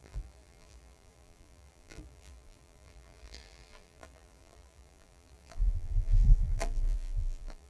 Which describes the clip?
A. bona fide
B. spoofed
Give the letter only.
B